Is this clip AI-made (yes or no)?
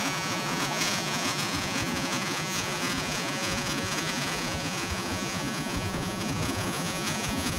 yes